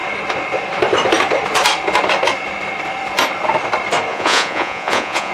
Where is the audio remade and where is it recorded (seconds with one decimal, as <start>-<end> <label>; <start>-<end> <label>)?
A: 0.0-4.1 recorded; 4.1-5.3 remade